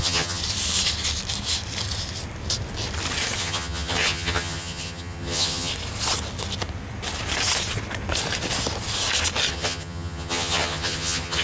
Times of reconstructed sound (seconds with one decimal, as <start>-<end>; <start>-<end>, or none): 0.0-0.4; 3.4-5.7; 9.5-11.4